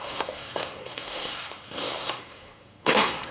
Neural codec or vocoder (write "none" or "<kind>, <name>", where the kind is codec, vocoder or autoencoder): codec, SNAC